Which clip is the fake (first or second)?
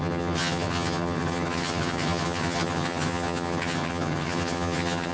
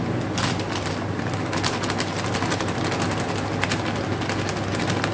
first